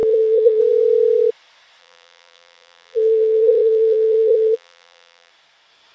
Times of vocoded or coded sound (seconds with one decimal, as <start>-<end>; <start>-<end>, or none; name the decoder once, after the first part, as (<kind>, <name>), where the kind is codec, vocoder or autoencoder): 0.0-0.6 (vocoder, BigVGAN v2); 1.8-5.3